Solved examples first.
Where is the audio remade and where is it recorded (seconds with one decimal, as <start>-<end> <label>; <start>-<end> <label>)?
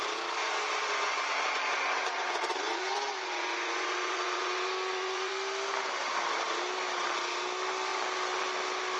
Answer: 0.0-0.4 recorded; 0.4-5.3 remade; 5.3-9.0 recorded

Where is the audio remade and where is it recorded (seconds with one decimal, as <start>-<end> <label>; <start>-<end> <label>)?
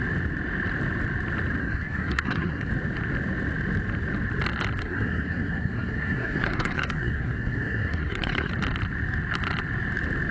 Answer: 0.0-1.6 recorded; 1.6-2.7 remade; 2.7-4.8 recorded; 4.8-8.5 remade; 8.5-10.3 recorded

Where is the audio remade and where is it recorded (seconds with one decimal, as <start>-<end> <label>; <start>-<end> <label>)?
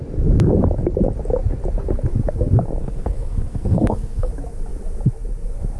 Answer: 0.0-2.8 recorded; 2.8-4.3 remade; 4.3-5.8 recorded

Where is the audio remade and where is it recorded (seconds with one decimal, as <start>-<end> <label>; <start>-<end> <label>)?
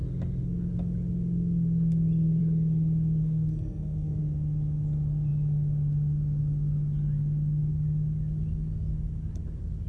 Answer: 0.0-3.2 recorded; 3.2-4.2 remade; 4.2-9.9 recorded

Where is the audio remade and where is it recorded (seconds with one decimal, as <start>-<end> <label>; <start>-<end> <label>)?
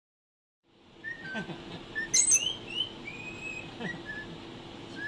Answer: 0.0-5.1 recorded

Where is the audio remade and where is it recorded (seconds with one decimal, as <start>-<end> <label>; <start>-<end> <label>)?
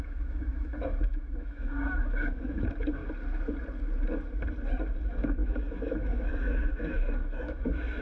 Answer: 0.0-3.0 remade; 3.0-5.0 recorded; 5.0-8.0 remade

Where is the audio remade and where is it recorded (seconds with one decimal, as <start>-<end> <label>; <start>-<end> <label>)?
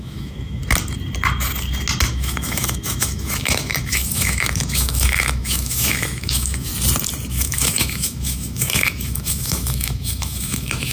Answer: 0.0-0.6 remade; 0.6-2.1 recorded; 2.1-6.7 remade; 6.7-7.3 recorded; 7.3-10.9 remade